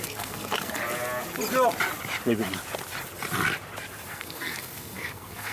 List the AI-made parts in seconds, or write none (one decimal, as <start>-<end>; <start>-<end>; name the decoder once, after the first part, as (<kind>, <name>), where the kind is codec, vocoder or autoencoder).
0.0-0.8 (codec, SNAC); 4.1-5.5